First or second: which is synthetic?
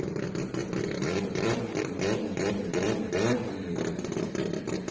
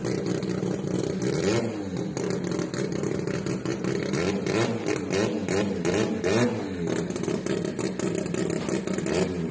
first